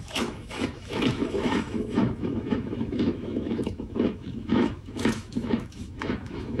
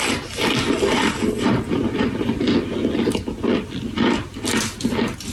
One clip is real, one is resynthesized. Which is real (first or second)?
second